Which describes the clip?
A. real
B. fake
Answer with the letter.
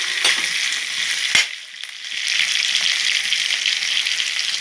A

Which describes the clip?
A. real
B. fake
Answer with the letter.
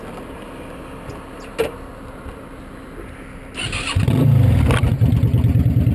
A